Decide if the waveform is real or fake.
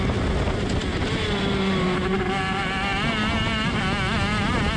real